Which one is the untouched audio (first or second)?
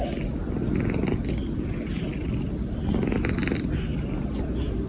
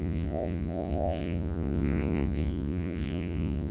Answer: first